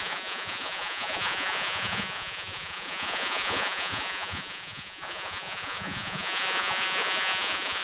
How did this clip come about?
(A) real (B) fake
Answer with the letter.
B